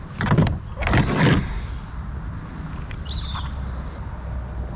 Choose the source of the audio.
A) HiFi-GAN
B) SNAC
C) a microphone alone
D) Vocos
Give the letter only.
C